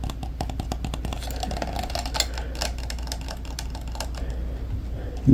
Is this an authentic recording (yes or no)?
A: yes